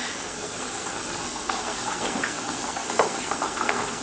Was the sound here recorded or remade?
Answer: remade